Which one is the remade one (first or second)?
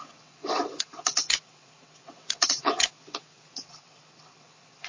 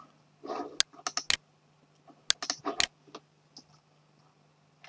first